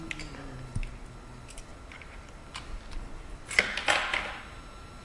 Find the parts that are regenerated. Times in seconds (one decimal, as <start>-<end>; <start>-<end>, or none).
none